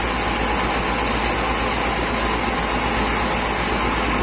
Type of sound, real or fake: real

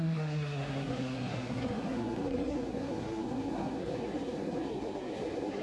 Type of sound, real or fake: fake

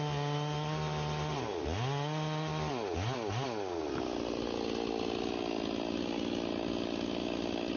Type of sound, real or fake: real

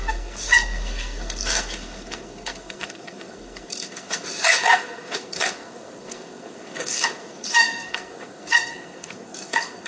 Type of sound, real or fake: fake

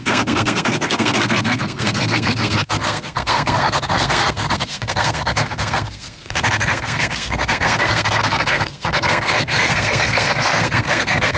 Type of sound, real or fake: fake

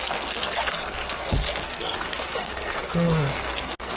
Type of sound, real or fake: fake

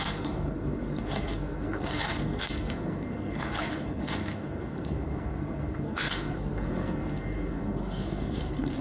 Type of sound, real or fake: fake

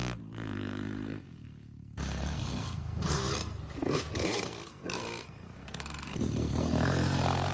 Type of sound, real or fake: fake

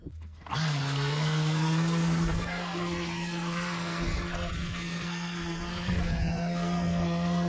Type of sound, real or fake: fake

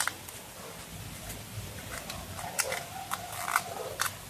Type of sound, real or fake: real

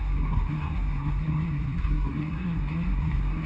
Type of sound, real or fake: fake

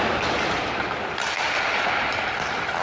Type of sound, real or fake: real